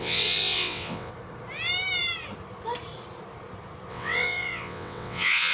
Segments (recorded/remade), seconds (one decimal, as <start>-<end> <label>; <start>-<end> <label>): 0.0-1.1 remade; 1.1-3.9 recorded; 3.9-5.5 remade